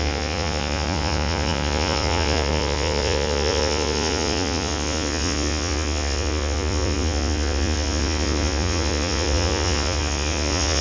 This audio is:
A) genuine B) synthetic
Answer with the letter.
B